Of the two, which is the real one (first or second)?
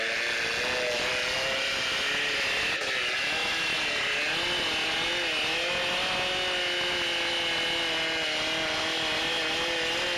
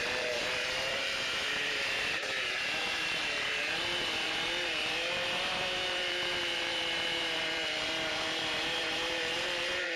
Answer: first